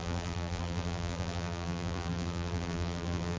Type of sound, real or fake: fake